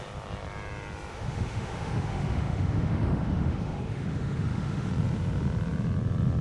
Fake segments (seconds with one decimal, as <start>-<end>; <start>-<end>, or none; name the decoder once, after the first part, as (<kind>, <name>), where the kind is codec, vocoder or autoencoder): 1.1-4.9 (autoencoder, DAC-VAE)